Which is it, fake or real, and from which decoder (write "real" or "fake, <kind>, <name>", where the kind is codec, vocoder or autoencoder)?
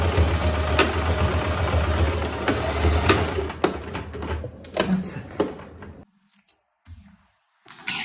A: real